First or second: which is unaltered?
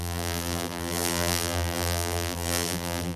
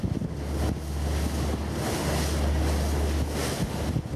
second